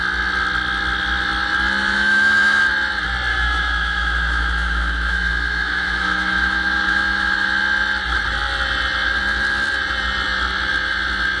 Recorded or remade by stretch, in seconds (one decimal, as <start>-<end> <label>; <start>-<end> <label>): 0.0-1.8 recorded; 1.8-2.6 remade; 2.6-3.3 recorded; 3.3-7.6 remade; 7.6-11.4 recorded